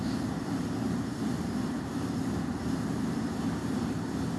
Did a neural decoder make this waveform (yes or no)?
yes